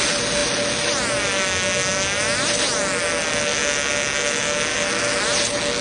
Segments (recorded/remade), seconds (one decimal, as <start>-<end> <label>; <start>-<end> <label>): 0.0-4.7 recorded; 4.7-5.2 remade; 5.2-5.8 recorded